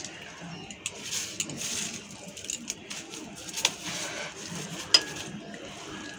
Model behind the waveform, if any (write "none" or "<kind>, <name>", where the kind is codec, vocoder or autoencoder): none